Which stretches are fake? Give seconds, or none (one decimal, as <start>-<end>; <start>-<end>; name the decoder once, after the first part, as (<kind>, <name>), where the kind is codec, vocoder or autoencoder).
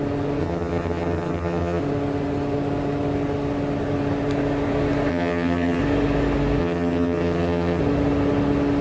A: 0.4-1.8 (vocoder, HiFi-GAN); 5.1-5.8; 6.6-7.8